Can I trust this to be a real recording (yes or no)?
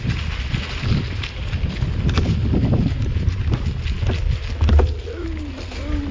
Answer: yes